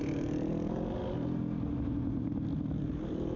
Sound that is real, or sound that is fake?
real